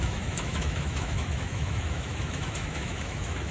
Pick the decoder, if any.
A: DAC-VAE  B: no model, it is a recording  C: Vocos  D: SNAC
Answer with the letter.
A